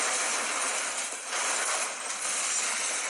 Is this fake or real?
real